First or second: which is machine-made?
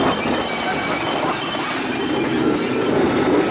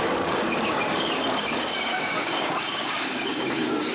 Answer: second